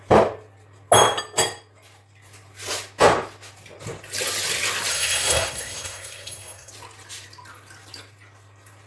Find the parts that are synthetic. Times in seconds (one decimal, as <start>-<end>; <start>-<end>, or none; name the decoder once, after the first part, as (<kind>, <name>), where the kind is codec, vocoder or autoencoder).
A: 4.9-6.7 (codec, SNAC)